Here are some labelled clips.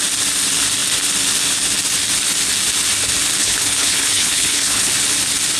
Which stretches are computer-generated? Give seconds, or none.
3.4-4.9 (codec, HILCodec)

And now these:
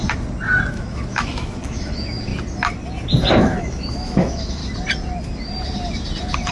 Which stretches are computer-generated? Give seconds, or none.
0.7-2.3 (autoencoder, DAC-VAE); 3.4-4.6